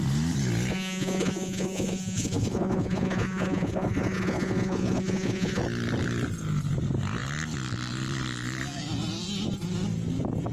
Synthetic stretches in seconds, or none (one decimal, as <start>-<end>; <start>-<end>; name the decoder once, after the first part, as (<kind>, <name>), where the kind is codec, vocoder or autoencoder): 0.7-5.6 (vocoder, Vocos)